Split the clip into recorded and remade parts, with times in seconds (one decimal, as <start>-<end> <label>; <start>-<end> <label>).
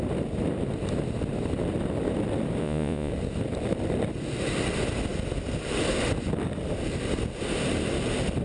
0.0-2.6 recorded; 2.6-3.1 remade; 3.1-8.4 recorded